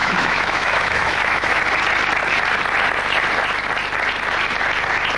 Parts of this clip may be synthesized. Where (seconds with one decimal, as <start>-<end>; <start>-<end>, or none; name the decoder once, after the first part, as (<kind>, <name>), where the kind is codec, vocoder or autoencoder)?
0.0-1.6 (autoencoder, DAC-VAE)